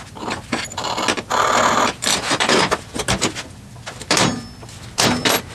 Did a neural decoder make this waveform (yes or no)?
no